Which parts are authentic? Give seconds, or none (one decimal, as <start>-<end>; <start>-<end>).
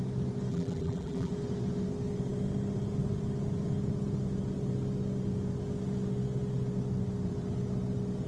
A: 0.0-0.5; 1.3-8.3